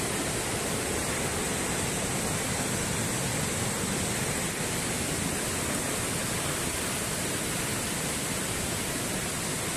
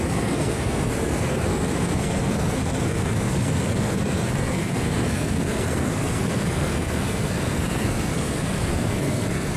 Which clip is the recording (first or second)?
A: first